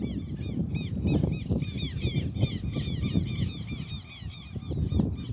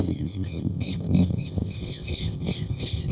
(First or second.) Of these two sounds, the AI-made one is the second